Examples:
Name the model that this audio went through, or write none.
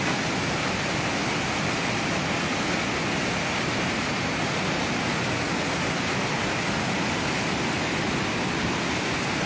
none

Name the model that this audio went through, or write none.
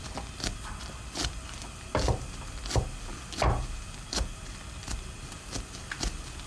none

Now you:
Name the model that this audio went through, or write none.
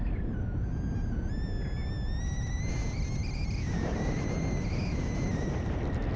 none